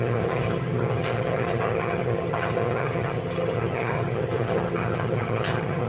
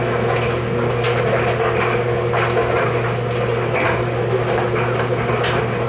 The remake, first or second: first